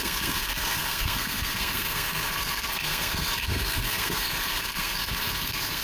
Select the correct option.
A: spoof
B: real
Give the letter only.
A